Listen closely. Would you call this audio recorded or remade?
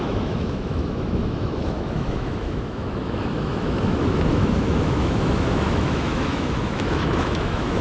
remade